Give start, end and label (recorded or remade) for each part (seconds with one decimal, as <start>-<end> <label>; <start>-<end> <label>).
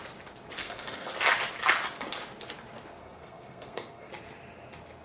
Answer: 0.0-0.6 recorded; 0.6-1.1 remade; 1.1-3.0 recorded; 3.0-4.1 remade; 4.1-5.0 recorded